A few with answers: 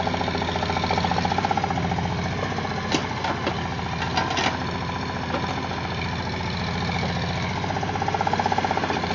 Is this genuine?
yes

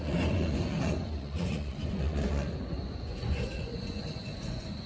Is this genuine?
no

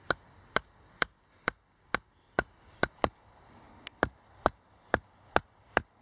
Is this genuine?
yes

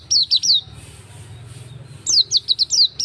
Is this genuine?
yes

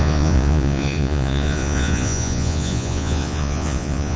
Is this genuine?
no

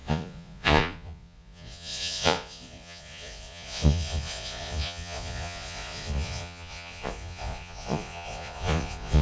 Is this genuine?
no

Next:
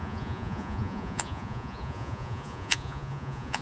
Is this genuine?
no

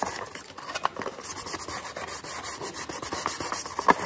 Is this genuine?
yes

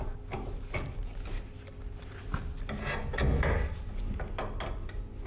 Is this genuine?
yes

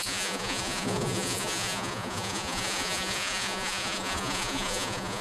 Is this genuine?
no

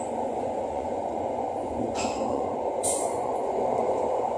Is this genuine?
no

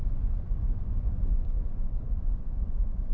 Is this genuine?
no